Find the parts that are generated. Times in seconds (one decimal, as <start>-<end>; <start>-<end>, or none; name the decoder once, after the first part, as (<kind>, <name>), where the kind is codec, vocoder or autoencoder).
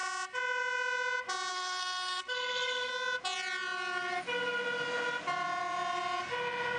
1.5-2.9 (codec, SNAC)